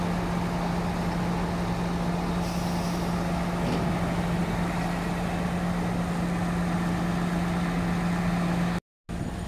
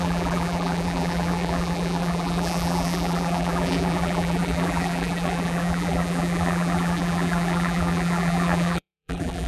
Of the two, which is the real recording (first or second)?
first